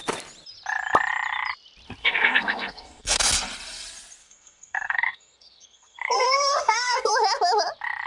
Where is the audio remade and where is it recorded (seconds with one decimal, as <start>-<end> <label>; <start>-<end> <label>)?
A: 0.0-2.0 recorded; 2.0-3.2 remade; 3.2-4.2 recorded; 4.2-7.1 remade; 7.1-8.1 recorded